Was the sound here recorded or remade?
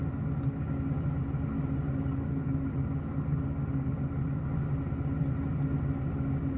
recorded